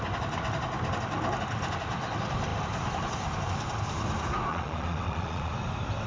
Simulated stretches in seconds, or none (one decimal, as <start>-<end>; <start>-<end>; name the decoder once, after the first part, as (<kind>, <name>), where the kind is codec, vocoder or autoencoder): 4.5-5.5 (vocoder, Vocos)